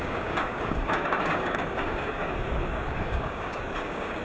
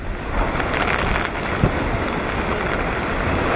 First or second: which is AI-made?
first